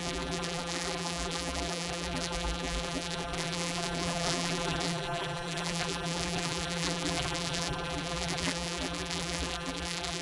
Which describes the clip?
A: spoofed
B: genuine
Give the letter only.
A